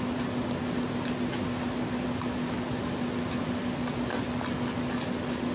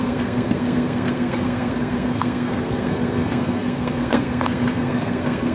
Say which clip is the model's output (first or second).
second